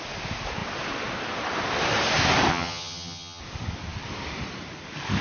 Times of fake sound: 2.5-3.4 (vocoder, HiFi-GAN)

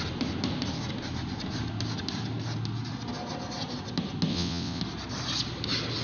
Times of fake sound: 4.3-4.8 (vocoder, WaveNeXt)

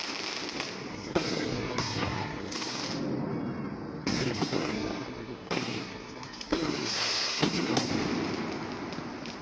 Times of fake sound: 0.9-2.8 (codec, SNAC); 4.0-7.9

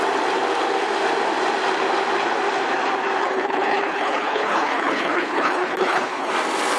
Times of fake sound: 3.2-6.3 (codec, HILCodec)